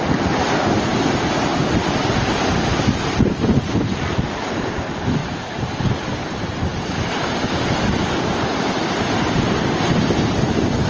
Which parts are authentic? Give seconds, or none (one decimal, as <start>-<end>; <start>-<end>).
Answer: 0.0-0.9; 4.0-5.2; 5.8-6.7; 10.0-10.9